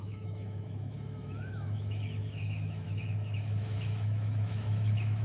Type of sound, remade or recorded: remade